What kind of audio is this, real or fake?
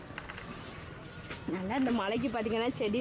real